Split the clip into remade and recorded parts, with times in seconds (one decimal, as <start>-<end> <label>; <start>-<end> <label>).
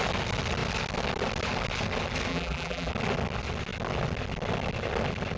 0.0-2.3 recorded; 2.3-2.9 remade; 2.9-5.4 recorded